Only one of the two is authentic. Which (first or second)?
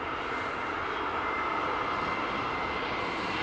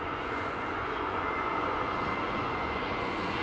first